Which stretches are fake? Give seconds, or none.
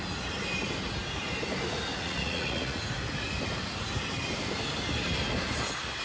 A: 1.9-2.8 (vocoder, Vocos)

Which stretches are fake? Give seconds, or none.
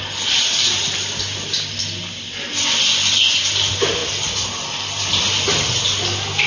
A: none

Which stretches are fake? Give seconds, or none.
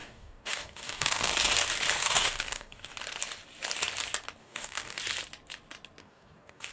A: 0.0-1.3 (codec, DAC); 2.0-2.9; 4.4-5.0; 6.0-6.7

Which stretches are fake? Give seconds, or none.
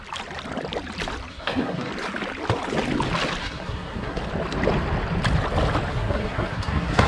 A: 1.3-1.9 (codec, SNAC); 3.4-4.2; 5.9-7.1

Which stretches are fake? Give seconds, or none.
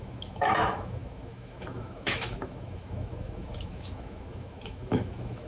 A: 0.0-5.5 (autoencoder, DAC-VAE)